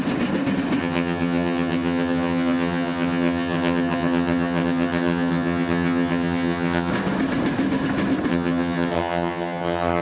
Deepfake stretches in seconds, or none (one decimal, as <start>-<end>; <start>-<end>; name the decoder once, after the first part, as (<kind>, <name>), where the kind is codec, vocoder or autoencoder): 0.8-6.9 (vocoder, HiFi-GAN); 8.3-10.0